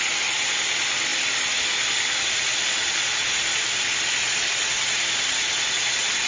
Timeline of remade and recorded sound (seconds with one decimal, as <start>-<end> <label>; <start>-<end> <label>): 0.0-6.3 recorded